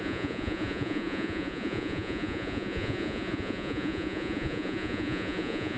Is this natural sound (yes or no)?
no